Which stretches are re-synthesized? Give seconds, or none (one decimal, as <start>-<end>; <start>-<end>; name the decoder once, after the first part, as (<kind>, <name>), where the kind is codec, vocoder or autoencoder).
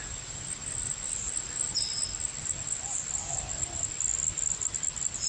none